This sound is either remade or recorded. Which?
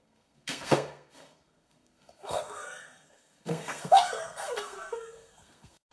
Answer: remade